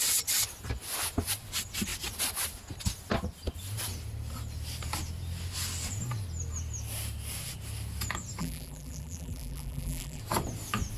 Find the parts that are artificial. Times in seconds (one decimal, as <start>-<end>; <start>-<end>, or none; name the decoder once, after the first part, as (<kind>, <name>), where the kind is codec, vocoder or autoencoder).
8.4-10.2 (vocoder, BigVGAN v2)